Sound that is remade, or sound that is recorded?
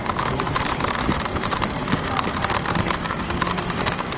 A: remade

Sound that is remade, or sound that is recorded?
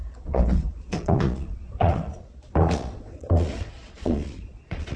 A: remade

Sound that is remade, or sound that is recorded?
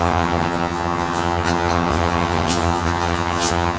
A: remade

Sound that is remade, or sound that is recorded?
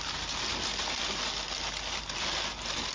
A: recorded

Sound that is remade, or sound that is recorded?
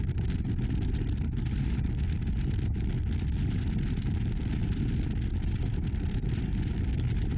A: recorded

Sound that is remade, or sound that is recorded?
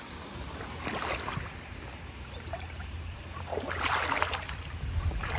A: recorded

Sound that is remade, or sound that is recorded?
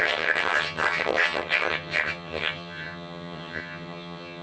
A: remade